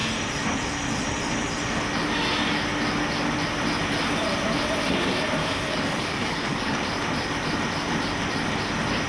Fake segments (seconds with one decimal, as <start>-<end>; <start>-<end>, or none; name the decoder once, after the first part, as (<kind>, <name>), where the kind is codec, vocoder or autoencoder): 5.4-6.8 (codec, DAC)